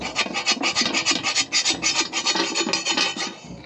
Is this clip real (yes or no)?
yes